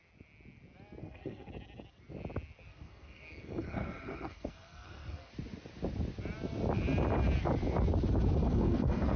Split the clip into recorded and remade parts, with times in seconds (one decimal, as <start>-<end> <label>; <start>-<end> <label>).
0.0-1.0 recorded; 1.0-1.5 remade; 1.5-2.7 recorded; 2.7-5.3 remade; 5.3-8.4 recorded; 8.4-9.2 remade